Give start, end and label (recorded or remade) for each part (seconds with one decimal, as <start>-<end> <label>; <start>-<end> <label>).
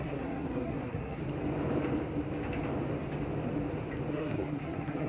0.0-1.2 remade; 1.2-4.1 recorded; 4.1-5.1 remade